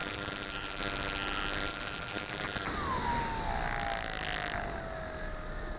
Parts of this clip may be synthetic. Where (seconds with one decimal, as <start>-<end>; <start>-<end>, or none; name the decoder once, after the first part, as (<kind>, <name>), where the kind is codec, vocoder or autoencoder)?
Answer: 0.0-0.8 (vocoder, BigVGAN v2); 1.7-3.1